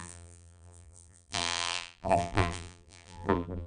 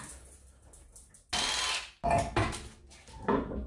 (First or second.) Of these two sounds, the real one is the second